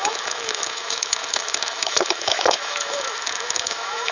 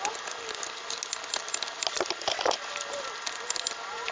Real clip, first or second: second